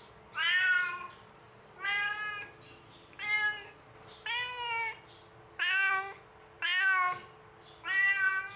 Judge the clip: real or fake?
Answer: real